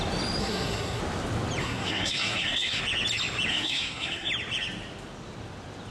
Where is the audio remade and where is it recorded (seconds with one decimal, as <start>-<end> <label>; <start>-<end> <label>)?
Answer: 0.0-0.4 recorded; 0.4-1.0 remade; 1.0-1.6 recorded; 1.6-2.8 remade; 2.8-3.5 recorded; 3.5-4.3 remade; 4.3-5.9 recorded